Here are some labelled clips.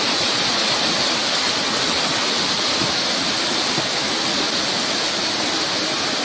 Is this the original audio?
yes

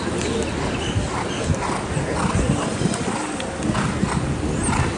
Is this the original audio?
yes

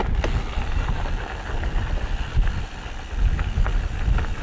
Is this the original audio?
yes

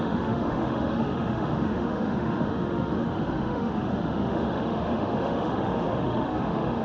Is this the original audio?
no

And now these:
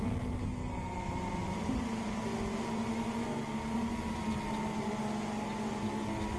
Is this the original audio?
yes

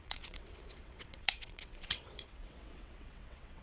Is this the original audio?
no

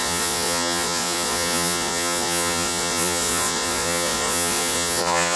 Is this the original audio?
no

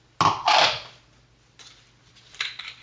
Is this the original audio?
yes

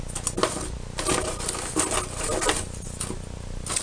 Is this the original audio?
yes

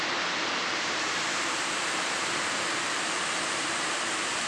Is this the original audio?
no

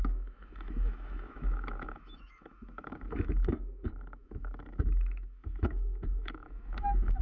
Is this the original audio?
no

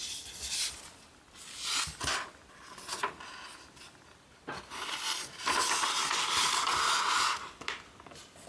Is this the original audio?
no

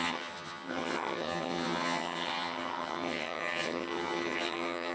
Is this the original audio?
no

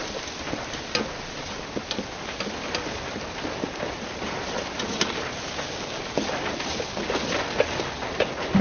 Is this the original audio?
yes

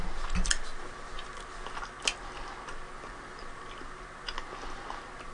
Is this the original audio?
yes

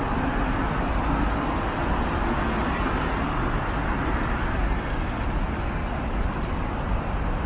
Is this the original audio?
yes